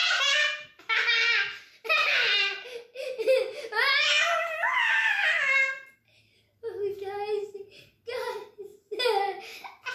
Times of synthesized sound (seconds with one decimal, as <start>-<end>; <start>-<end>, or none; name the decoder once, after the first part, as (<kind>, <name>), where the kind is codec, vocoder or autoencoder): none